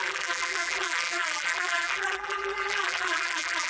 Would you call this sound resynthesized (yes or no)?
yes